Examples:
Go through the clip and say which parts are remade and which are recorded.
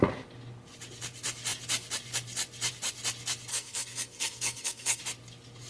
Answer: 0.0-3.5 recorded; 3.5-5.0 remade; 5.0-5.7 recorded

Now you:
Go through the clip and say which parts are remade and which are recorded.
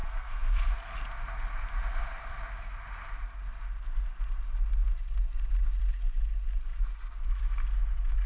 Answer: 0.0-0.7 remade; 0.7-8.3 recorded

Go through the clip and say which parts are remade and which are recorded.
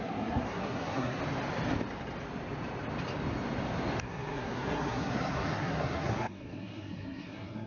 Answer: 0.0-1.2 remade; 1.2-4.0 recorded; 4.0-7.7 remade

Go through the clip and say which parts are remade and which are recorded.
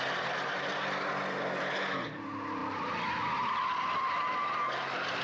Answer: 0.0-5.2 recorded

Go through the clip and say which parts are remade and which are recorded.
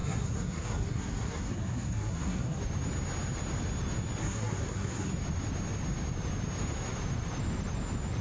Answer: 0.0-2.6 remade; 2.6-4.2 recorded; 4.2-5.1 remade; 5.1-8.2 recorded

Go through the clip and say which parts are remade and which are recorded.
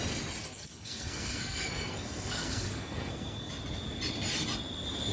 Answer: 0.0-0.4 recorded; 0.4-3.5 remade; 3.5-5.1 recorded